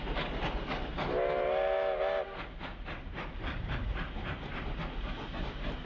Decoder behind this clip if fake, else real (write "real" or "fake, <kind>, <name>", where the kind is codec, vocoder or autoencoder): real